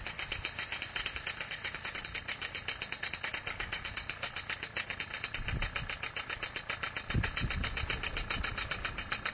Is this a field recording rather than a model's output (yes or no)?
yes